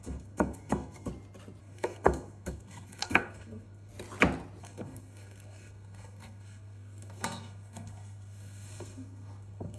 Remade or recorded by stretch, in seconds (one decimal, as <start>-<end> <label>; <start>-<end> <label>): 0.0-1.1 remade; 1.1-1.6 recorded; 1.6-3.9 remade; 3.9-4.6 recorded; 4.6-9.8 remade